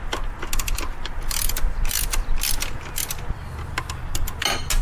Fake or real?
real